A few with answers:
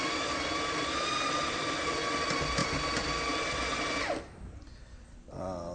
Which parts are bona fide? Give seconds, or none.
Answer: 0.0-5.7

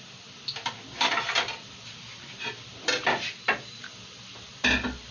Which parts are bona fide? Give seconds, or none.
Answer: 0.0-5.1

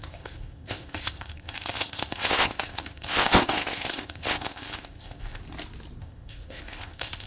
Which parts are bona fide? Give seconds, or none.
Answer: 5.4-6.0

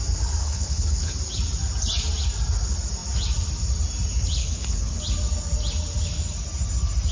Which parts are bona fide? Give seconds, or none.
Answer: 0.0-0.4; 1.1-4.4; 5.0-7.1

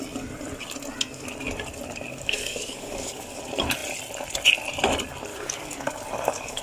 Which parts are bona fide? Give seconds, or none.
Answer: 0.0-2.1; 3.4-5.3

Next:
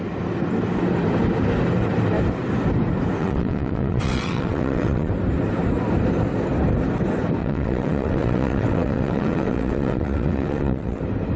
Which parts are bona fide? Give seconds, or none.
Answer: 0.0-3.2; 5.1-7.4; 11.0-11.4

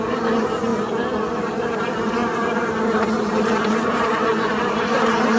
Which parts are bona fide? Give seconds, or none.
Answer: 0.7-1.4

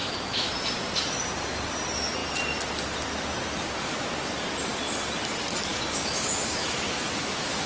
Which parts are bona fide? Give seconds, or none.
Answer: 0.5-5.7